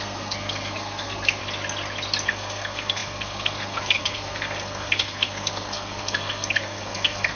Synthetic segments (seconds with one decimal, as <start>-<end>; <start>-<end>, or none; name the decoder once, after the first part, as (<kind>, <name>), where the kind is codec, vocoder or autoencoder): 0.0-1.4 (codec, SNAC); 2.3-7.4

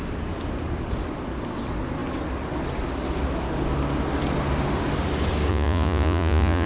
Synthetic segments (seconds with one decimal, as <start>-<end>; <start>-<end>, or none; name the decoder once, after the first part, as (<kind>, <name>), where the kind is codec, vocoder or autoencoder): 5.5-6.7 (vocoder, Vocos)